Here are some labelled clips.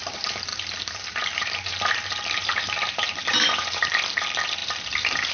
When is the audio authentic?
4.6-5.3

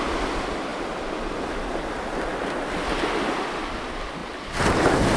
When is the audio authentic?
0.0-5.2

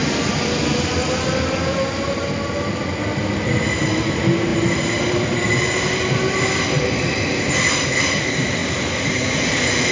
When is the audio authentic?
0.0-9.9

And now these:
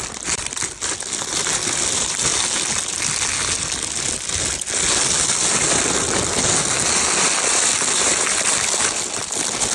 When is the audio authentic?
2.3-7.4

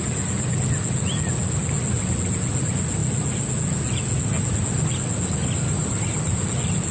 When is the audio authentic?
0.0-5.4; 6.4-6.9